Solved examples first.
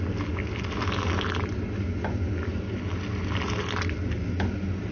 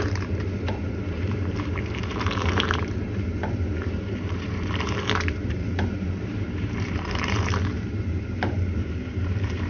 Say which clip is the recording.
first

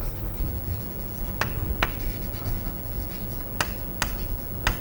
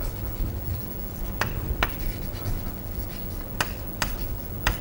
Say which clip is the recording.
first